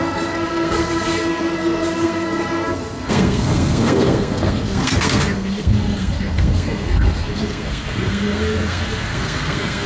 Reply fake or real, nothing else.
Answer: fake